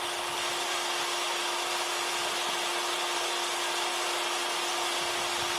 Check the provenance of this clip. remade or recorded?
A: recorded